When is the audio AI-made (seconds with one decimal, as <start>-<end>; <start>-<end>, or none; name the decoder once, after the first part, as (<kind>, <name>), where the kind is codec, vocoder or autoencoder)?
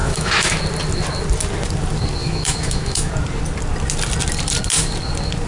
0.0-0.6 (autoencoder, DAC-VAE); 2.2-3.1